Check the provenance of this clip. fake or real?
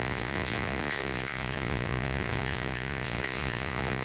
fake